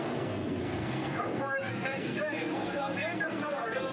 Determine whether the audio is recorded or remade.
remade